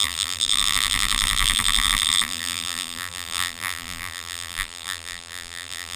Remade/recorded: remade